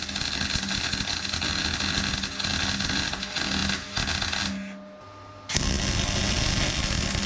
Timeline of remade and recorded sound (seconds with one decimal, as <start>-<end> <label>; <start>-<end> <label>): 0.0-7.3 recorded